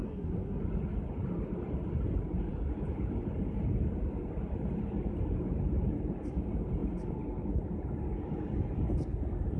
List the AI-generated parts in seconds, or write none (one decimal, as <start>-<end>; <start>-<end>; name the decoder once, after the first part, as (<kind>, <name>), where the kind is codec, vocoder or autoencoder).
0.0-0.6 (codec, SNAC)